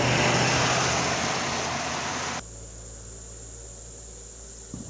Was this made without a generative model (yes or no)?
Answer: yes